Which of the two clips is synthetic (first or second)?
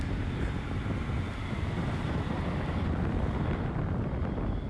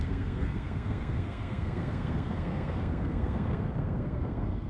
second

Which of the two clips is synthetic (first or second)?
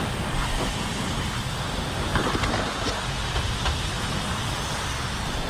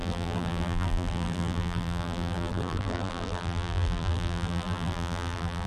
second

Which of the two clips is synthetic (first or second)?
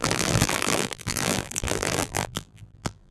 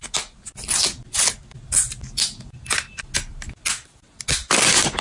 first